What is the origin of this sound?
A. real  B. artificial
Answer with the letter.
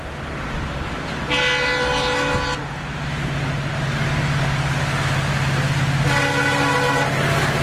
A